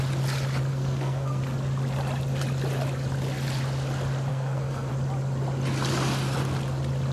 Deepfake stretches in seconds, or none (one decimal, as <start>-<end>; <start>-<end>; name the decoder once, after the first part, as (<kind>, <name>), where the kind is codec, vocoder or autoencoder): 0.7-1.4 (codec, SNAC); 4.3-4.9